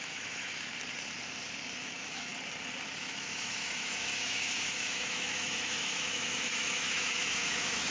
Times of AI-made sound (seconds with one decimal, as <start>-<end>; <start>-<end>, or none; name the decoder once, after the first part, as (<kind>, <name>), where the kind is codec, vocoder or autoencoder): 0.0-0.7 (autoencoder, DAC-VAE); 1.8-2.3; 3.0-7.9

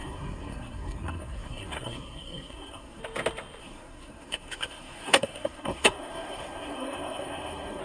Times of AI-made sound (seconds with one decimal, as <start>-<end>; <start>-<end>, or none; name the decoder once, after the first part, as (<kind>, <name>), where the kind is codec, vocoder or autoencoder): 0.0-3.0 (codec, SNAC); 3.6-7.8